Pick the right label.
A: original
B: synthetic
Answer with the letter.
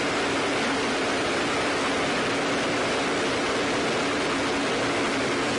A